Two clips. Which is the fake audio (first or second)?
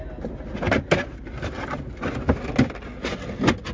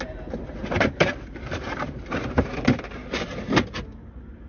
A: second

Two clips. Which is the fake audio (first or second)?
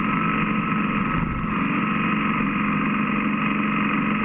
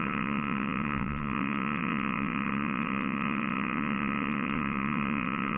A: second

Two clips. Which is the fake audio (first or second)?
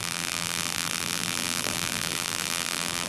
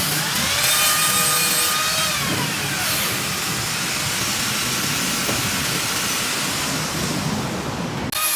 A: first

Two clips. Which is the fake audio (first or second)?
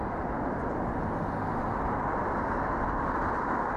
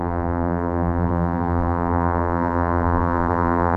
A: second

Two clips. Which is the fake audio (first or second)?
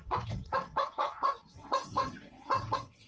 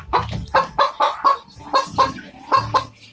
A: first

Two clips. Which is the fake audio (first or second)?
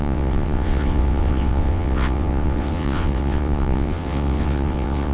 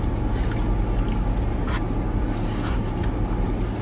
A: first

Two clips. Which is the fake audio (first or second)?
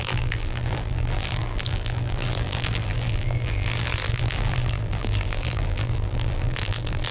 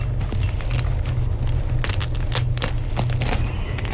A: first